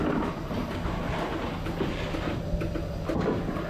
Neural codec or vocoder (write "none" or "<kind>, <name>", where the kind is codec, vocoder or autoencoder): none